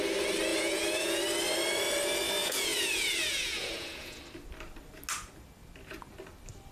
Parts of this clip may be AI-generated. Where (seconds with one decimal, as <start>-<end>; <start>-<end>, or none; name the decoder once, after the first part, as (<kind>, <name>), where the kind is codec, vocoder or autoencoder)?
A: 0.5-1.2 (vocoder, Vocos); 2.4-4.2